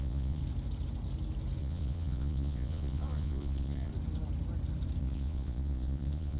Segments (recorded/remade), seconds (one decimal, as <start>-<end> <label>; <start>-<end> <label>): 0.0-0.4 remade; 0.4-1.6 recorded; 1.6-3.9 remade; 3.9-5.0 recorded; 5.0-6.4 remade